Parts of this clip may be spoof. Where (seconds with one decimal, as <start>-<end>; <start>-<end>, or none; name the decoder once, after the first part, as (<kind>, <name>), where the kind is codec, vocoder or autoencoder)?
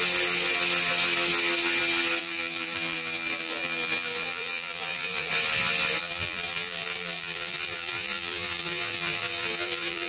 2.2-5.3 (vocoder, BigVGAN v2); 6.0-10.1